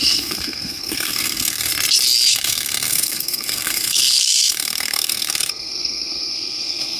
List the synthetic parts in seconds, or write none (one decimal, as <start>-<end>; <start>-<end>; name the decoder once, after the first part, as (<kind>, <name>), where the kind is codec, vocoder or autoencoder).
0.0-1.7 (codec, SNAC); 2.3-7.0

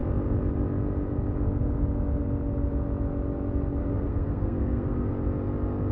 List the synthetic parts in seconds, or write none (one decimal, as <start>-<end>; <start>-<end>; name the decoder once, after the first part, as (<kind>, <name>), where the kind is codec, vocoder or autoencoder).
3.8-5.1 (codec, SNAC)

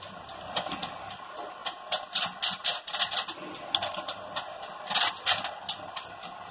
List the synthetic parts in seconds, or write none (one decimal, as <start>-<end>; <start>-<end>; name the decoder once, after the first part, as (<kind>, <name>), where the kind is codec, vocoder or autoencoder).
none